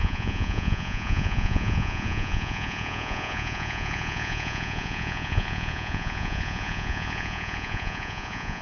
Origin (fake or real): fake